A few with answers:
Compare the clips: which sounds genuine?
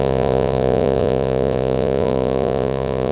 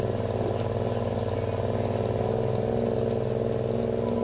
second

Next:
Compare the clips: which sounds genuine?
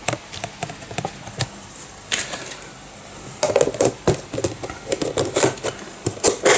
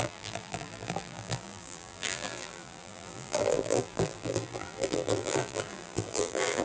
first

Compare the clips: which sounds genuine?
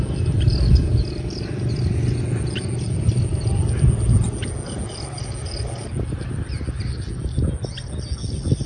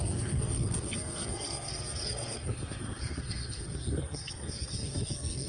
first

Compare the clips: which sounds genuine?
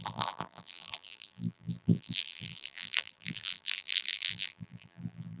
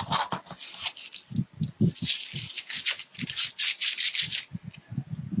second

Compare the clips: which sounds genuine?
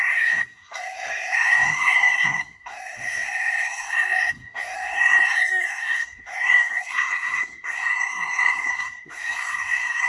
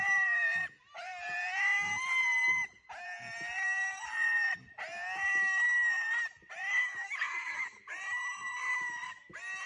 second